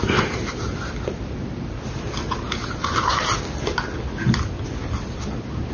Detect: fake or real real